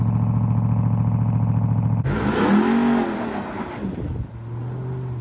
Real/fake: real